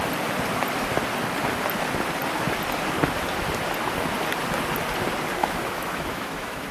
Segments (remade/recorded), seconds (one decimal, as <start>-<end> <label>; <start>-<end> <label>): 0.0-5.4 recorded; 5.4-6.7 remade